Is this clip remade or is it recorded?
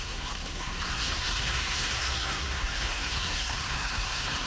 remade